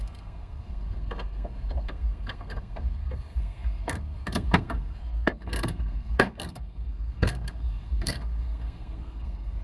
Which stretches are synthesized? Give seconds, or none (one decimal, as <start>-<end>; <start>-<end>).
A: 0.0-9.6